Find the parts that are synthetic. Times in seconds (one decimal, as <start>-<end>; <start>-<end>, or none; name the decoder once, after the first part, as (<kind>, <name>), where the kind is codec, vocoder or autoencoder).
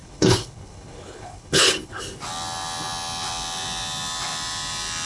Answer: 0.0-2.0 (codec, HILCodec)